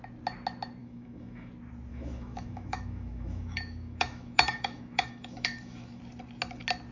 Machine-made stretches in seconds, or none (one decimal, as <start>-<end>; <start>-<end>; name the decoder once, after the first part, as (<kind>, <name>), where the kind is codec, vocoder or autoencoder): 0.8-1.5 (autoencoder, DAC-VAE); 1.9-6.0